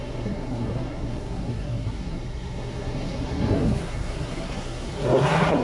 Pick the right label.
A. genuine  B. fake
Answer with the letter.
B